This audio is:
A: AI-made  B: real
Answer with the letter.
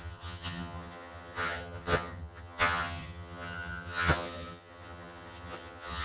A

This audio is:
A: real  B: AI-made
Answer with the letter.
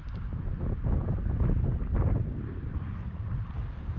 B